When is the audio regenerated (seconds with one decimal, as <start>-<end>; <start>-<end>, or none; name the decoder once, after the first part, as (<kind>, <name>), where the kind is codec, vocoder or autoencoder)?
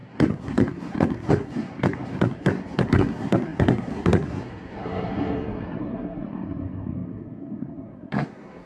0.0-8.7 (codec, SNAC)